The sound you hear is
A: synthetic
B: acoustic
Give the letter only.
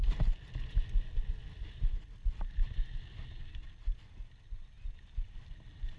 B